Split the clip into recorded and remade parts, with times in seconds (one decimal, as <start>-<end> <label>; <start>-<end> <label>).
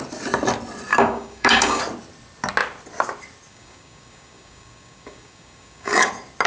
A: 0.0-0.9 recorded; 0.9-1.8 remade; 1.8-3.5 recorded; 3.5-6.1 remade; 6.1-6.5 recorded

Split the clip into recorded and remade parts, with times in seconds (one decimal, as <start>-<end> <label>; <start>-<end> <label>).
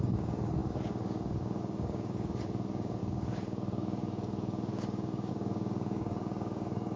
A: 0.0-7.0 remade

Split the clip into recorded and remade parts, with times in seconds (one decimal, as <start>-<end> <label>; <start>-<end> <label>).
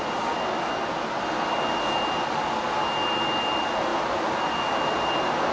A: 0.0-5.5 recorded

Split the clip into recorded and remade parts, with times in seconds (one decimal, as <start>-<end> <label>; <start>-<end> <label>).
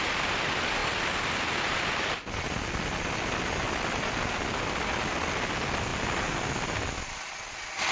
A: 0.0-7.9 recorded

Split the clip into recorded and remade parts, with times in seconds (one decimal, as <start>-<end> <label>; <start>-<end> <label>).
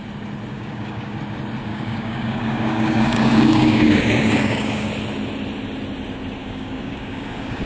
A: 0.0-0.5 recorded; 0.5-1.2 remade; 1.2-1.7 recorded; 1.7-4.9 remade; 4.9-6.4 recorded; 6.4-7.7 remade